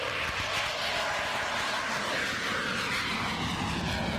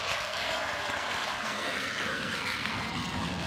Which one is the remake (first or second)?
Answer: second